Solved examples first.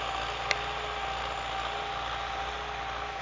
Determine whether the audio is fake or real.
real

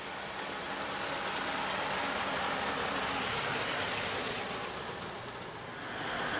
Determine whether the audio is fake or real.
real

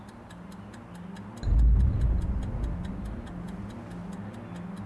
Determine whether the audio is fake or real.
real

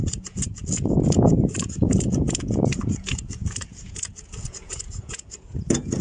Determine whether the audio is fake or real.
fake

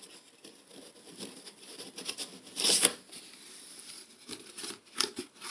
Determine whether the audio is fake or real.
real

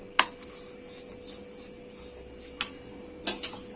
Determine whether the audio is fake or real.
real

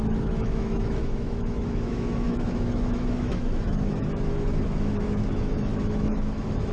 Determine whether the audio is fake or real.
fake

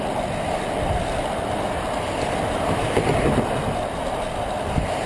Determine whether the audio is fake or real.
real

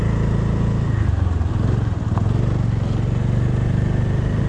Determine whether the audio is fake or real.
real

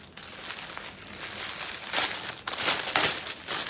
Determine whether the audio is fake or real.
real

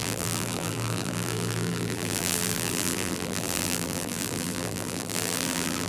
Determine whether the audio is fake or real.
fake